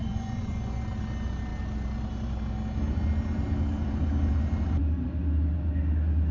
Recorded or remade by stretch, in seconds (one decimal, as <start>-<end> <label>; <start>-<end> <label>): 0.0-0.8 remade; 0.8-6.3 recorded